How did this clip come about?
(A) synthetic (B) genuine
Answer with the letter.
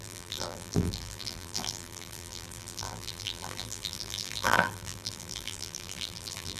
A